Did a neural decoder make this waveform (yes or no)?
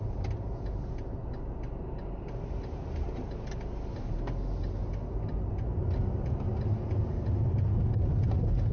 no